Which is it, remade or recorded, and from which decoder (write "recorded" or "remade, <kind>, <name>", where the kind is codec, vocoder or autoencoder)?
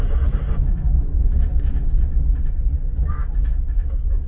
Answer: recorded